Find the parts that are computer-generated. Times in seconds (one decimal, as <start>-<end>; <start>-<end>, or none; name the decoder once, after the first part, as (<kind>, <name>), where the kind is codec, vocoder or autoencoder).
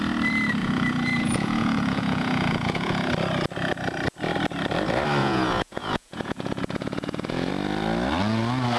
0.6-3.1 (vocoder, Vocos); 5.2-7.5